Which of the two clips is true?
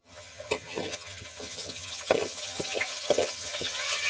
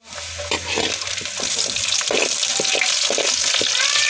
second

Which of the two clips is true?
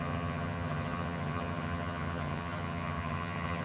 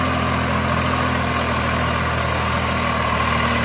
second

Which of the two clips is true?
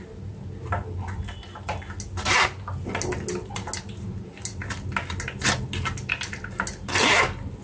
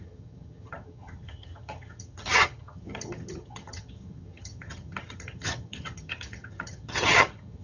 first